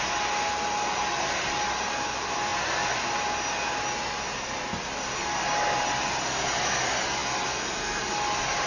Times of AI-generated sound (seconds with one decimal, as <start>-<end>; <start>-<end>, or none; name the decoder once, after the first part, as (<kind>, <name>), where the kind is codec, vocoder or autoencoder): none